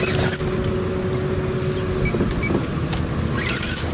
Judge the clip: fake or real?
real